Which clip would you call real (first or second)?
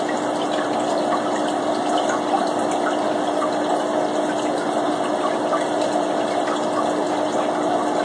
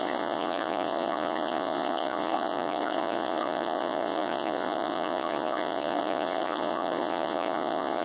first